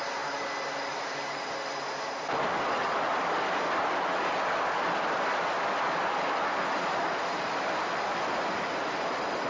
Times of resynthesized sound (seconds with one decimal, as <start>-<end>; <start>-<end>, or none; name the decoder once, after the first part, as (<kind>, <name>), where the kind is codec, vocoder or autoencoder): none